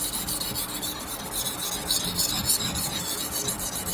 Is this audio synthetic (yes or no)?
no